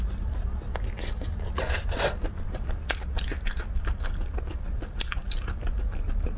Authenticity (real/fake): real